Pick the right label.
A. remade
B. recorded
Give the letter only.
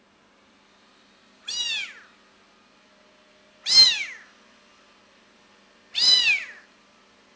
B